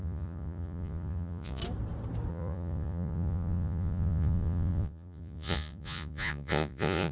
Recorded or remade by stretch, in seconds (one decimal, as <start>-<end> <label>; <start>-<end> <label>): 0.0-1.6 remade; 1.6-2.3 recorded; 2.3-7.1 remade